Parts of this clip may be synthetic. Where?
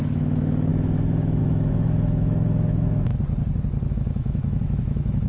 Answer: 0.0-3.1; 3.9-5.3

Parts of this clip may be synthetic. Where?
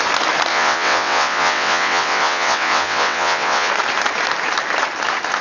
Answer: 0.5-3.7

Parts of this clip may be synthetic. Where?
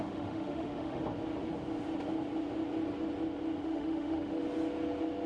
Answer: 0.0-1.0; 3.6-4.4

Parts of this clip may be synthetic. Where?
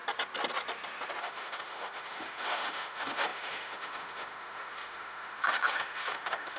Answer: 1.2-6.6